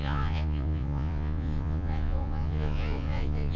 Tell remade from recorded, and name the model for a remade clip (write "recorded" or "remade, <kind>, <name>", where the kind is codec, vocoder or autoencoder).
remade, vocoder, Vocos